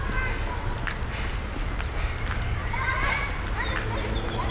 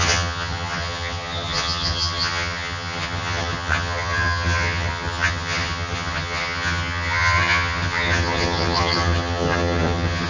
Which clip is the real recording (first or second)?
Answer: first